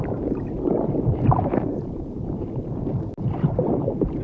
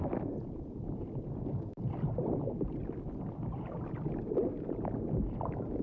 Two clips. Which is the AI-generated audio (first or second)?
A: first